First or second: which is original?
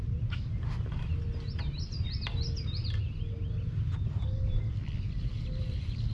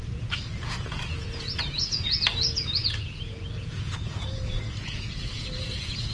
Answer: first